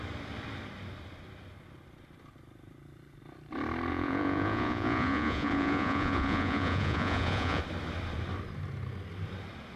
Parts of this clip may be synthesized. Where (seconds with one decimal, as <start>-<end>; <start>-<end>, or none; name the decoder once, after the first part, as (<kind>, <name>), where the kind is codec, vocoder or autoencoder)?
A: 3.9-7.6 (vocoder, Vocos)